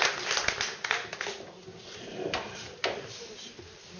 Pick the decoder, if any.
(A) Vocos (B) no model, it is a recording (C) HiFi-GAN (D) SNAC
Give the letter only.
B